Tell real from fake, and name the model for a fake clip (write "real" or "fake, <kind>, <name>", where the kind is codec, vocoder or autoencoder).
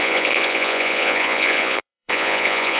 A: fake, vocoder, Vocos